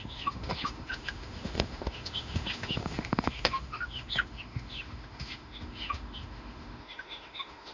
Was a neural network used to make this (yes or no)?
yes